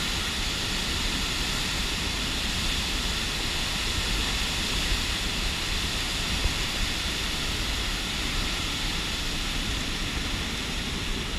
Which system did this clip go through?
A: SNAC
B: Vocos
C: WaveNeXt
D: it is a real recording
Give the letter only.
D